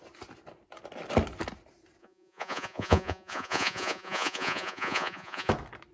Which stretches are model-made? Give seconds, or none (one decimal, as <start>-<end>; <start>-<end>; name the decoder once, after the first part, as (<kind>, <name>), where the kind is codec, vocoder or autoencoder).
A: 2.0-5.5 (vocoder, Vocos)